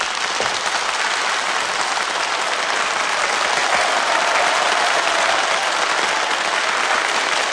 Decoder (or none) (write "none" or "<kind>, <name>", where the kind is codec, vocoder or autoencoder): none